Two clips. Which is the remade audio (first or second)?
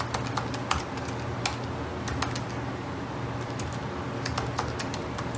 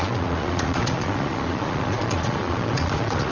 second